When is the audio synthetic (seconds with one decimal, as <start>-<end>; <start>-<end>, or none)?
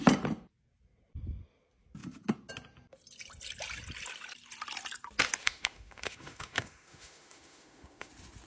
5.4-8.1